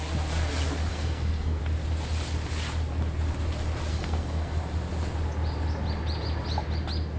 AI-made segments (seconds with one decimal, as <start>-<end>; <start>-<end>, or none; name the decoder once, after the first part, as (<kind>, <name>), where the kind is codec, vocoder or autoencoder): 0.9-1.6 (codec, SNAC); 3.9-4.6